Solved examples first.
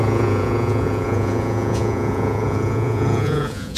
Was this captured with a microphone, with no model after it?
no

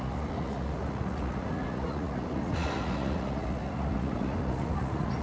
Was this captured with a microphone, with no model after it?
no